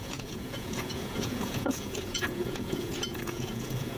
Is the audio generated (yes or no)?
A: yes